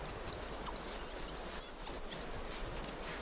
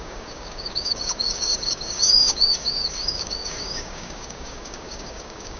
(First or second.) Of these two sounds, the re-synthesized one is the second